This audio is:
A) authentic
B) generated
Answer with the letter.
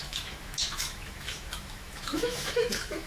B